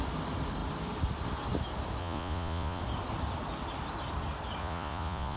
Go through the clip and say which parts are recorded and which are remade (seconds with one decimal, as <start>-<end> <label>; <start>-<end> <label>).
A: 0.0-2.0 recorded; 2.0-2.8 remade; 2.8-4.6 recorded; 4.6-5.4 remade